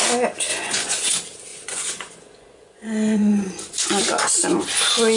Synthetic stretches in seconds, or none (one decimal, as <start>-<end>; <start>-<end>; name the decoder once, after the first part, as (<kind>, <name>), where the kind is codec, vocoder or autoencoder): 0.5-1.1 (vocoder, Vocos); 1.5-4.0